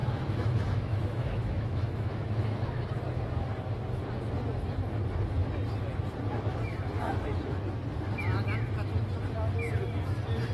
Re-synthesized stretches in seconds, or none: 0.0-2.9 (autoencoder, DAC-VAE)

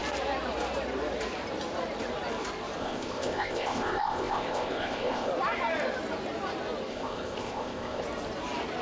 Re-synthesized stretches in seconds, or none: 2.8-5.3 (codec, ZipCodec); 6.9-8.0